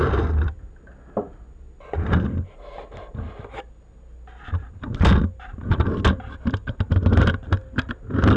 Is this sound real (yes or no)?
yes